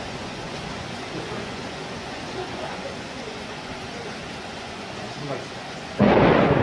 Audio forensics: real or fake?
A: fake